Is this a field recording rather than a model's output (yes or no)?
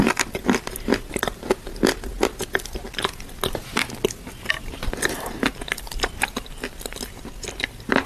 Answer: yes